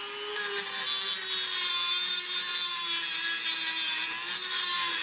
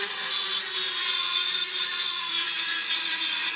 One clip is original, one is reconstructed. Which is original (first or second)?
first